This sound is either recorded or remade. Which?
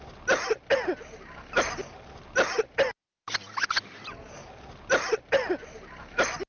recorded